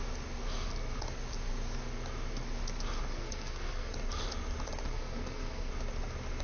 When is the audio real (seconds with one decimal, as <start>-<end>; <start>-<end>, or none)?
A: 0.0-3.1; 3.9-4.9; 5.7-6.4